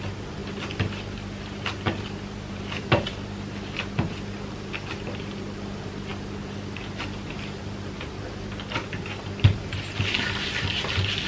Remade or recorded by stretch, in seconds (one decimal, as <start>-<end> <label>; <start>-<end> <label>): 0.0-11.3 recorded